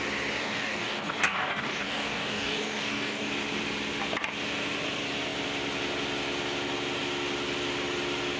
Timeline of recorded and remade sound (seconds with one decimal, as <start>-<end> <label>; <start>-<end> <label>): 0.0-0.4 recorded; 0.4-3.3 remade; 3.3-8.4 recorded